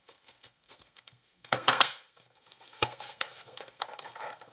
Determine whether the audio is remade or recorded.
remade